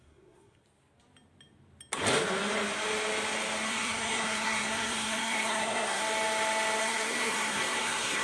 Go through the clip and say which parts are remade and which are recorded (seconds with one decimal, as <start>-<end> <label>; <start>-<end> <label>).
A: 0.0-0.6 remade; 0.6-3.7 recorded; 3.7-6.0 remade; 6.0-6.8 recorded; 6.8-8.2 remade